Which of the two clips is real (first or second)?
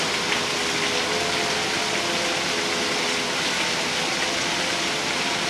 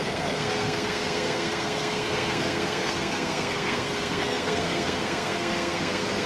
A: first